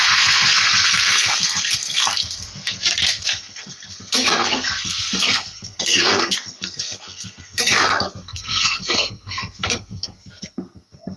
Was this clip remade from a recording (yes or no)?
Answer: yes